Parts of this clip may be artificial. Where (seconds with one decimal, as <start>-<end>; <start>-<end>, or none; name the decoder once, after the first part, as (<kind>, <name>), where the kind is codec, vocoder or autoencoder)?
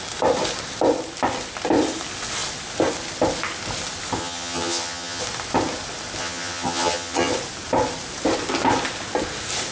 4.2-5.2 (vocoder, HiFi-GAN); 6.2-7.3